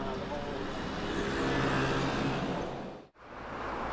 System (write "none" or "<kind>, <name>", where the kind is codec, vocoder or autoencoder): none